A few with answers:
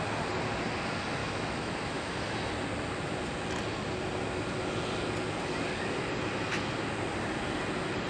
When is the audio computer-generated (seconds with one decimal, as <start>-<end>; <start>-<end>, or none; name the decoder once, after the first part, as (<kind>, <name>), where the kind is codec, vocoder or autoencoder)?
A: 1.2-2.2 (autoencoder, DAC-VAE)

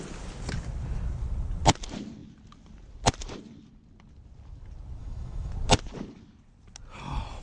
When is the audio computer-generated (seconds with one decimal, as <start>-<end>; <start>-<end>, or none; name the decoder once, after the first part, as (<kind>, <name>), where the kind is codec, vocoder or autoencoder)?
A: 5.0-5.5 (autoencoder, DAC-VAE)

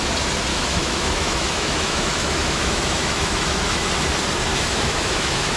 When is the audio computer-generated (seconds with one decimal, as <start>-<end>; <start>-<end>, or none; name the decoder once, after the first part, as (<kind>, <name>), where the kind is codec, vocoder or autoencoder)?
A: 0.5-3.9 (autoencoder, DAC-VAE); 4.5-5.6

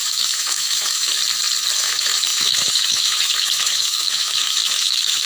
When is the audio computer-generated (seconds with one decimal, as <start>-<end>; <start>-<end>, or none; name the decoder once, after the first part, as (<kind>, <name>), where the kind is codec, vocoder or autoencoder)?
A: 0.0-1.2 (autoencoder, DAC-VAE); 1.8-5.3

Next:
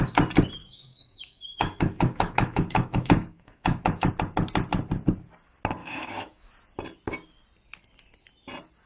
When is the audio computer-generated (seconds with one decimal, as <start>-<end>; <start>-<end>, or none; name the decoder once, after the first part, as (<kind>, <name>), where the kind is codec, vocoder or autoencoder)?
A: 0.6-4.1 (autoencoder, DAC-VAE); 5.8-6.5